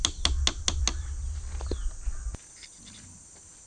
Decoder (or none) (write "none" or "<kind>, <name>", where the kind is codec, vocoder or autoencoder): none